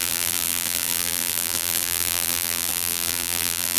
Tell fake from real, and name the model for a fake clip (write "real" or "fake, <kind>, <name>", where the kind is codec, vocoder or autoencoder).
fake, vocoder, BigVGAN v2